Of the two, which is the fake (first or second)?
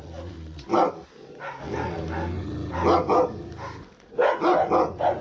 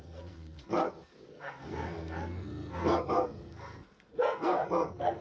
second